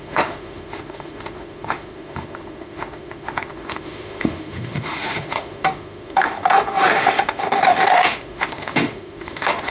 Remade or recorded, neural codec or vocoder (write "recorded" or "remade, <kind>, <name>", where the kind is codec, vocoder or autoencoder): remade, autoencoder, DAC-VAE